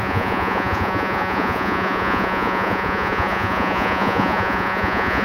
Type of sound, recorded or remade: remade